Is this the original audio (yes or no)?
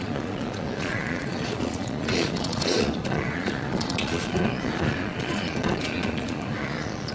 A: no